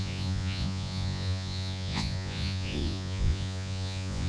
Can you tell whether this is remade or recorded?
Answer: remade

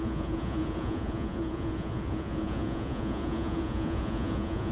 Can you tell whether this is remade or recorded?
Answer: remade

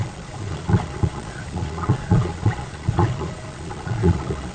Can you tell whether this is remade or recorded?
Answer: remade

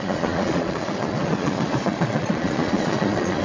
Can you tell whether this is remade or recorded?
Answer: remade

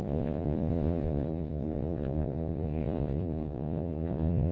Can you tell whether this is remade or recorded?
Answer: remade